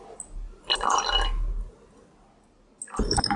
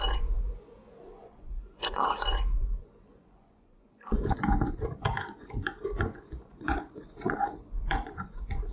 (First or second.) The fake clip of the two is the second